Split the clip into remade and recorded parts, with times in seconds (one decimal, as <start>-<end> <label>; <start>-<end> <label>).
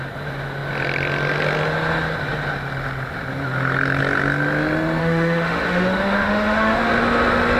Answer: 0.0-5.0 recorded; 5.0-6.9 remade; 6.9-7.6 recorded